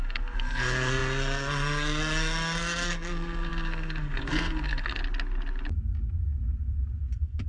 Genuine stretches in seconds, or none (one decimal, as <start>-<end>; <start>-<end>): 5.0-7.1

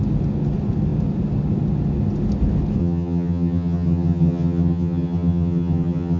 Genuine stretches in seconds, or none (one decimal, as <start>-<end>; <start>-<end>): 0.0-2.8

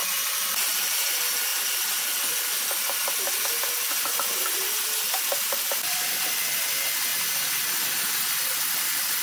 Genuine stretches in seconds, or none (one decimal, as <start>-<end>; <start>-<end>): 0.0-9.2

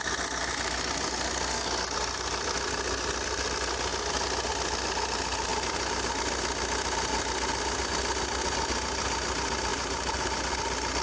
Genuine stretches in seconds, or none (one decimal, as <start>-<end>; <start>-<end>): 0.0-5.5; 6.1-9.7; 10.5-11.0

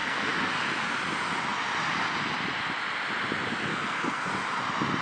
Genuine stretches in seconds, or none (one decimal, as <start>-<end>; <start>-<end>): 0.5-3.7; 4.3-5.0

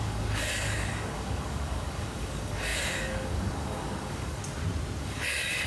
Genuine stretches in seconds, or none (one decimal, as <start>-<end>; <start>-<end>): 4.4-5.0